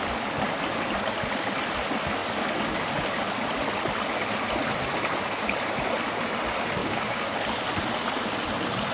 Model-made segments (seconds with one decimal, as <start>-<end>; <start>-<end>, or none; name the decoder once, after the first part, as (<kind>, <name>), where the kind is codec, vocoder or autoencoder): 6.8-7.4 (codec, DAC)